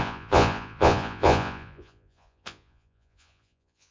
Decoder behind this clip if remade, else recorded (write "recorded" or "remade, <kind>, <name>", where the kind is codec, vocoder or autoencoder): remade, vocoder, Vocos